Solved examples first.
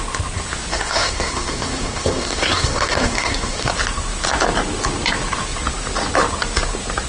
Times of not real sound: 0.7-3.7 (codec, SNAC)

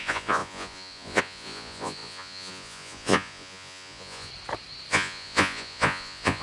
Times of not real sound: 0.0-4.3 (vocoder, Vocos); 4.9-6.4

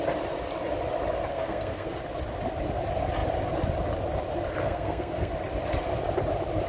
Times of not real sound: 1.3-2.0 (codec, SNAC); 4.6-5.3

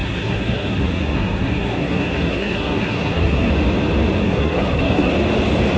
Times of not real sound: 0.0-3.5 (codec, SNAC); 4.2-5.1

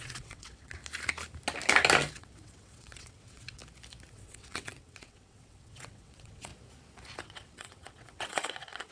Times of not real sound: 0.0-0.8 (vocoder, WaveNeXt); 2.1-3.6; 4.1-6.5; 7.2-8.9